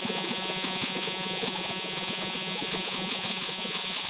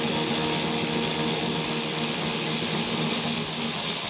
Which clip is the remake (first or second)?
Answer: first